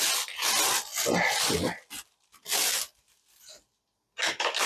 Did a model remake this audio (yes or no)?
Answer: no